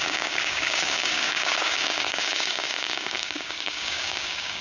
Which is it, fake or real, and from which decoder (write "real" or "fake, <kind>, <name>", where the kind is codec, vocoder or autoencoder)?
fake, codec, DAC